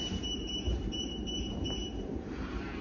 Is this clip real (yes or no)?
no